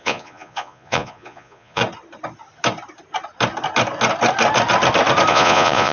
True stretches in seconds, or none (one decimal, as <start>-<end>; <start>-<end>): 1.8-5.3